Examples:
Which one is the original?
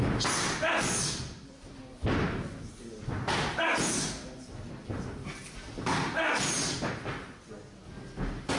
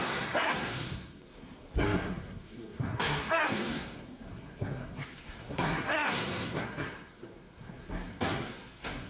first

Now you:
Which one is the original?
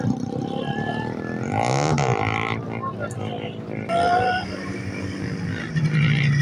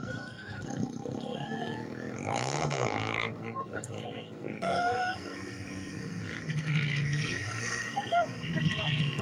first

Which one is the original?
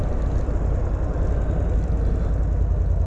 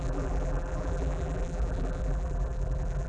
first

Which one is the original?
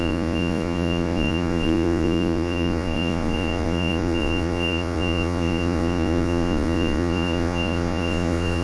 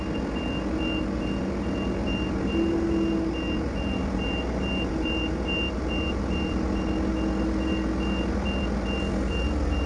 second